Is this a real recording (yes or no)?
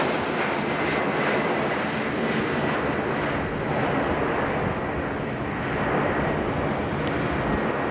yes